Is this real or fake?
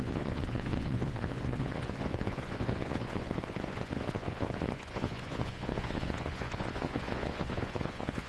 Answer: fake